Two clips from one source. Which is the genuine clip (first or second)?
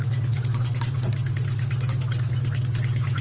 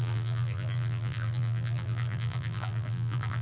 first